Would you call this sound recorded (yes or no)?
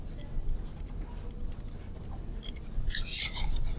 yes